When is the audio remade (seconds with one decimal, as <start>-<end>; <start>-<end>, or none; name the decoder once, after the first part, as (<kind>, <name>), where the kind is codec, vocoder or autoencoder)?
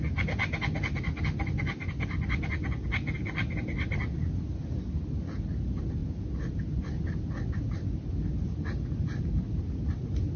none